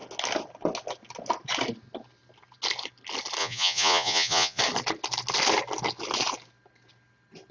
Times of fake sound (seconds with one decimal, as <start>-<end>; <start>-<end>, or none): 3.4-4.6